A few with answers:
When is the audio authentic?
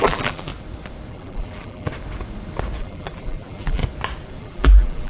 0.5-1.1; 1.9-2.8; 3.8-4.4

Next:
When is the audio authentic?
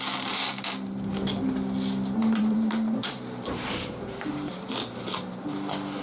0.0-2.2; 5.1-6.0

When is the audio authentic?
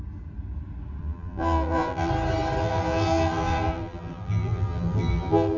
0.0-1.0; 2.1-2.6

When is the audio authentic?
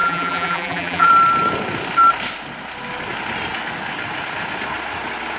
1.1-5.4